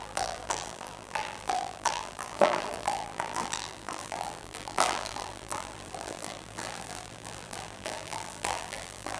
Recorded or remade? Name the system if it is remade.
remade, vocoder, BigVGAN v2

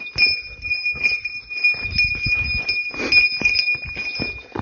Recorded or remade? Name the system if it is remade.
recorded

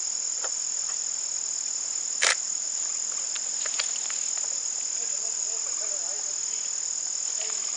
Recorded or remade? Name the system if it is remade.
recorded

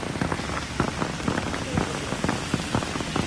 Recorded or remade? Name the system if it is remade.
recorded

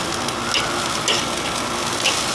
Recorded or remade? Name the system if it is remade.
recorded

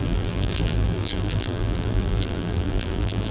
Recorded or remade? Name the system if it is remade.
remade, vocoder, BigVGAN v2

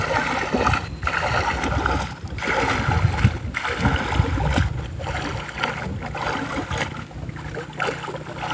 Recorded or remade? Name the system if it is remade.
recorded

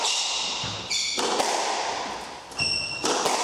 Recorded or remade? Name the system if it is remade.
recorded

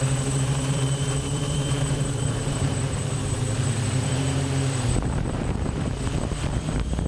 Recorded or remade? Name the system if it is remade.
remade, vocoder, BigVGAN v2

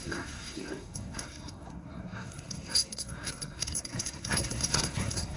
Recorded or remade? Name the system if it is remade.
remade, codec, SNAC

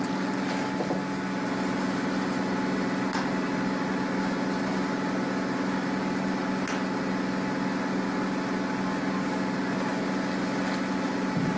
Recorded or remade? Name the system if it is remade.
recorded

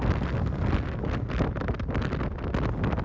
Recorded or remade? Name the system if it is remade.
recorded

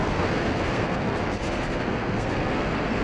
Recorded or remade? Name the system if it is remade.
remade, codec, SNAC